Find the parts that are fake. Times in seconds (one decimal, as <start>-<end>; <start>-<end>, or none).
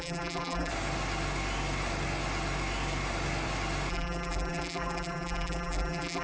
0.0-0.7; 3.9-6.2